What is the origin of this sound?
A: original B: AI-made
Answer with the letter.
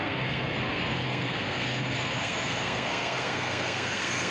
B